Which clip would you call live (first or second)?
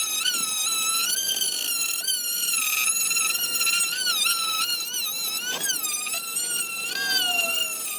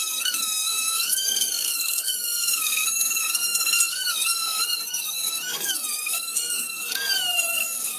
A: first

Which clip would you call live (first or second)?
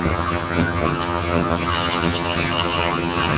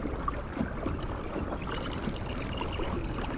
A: second